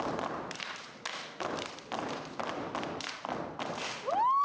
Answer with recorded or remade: recorded